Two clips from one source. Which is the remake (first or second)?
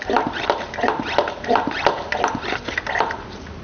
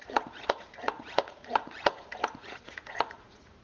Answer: second